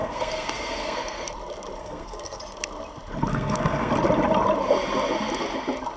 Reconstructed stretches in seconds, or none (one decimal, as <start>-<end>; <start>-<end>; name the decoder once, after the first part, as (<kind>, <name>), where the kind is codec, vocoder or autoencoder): 0.0-1.3 (codec, SNAC); 1.8-2.4; 3.3-3.9